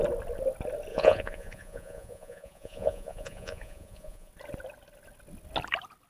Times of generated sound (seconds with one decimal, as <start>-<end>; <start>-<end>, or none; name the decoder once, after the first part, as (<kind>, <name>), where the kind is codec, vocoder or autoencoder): 0.9-4.3 (vocoder, Vocos)